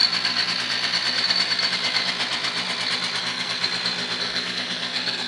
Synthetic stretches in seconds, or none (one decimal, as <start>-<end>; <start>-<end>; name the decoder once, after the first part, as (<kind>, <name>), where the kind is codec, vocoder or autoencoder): 3.2-3.6 (codec, SNAC); 4.2-5.3